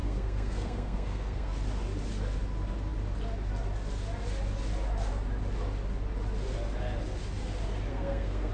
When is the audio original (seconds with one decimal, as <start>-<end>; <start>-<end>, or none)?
1.5-7.9